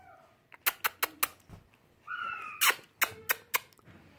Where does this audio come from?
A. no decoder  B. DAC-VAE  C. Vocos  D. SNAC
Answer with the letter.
A